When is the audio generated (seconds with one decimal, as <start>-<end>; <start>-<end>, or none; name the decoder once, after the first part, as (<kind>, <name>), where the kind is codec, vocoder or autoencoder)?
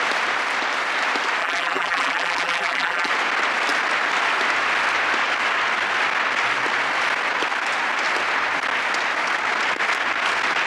1.4-3.1 (vocoder, BigVGAN v2)